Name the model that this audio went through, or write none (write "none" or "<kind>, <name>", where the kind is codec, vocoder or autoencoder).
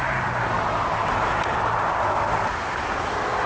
none